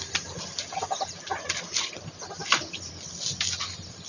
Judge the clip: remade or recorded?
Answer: recorded